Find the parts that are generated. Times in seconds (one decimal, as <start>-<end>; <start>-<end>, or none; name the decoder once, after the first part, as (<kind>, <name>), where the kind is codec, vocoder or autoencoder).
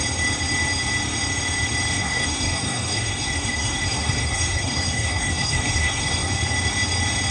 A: 1.9-6.3 (codec, SNAC)